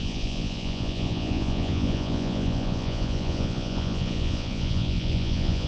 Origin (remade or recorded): remade